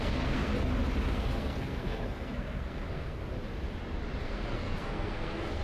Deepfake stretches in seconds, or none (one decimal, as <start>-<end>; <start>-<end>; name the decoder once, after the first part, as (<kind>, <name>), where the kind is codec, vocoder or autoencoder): 0.0-0.5 (codec, SNAC); 1.1-3.2; 4.2-5.6